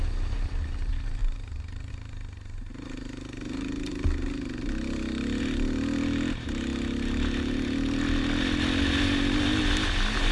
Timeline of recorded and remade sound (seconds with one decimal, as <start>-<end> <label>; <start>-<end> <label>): 0.0-1.2 recorded; 1.2-1.9 remade; 1.9-10.3 recorded